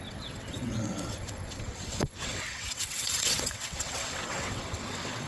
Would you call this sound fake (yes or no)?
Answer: yes